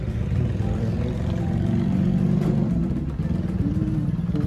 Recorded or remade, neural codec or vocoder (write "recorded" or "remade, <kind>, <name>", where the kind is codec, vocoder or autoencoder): recorded